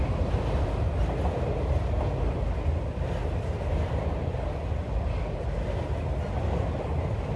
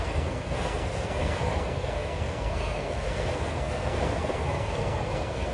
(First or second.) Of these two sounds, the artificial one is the second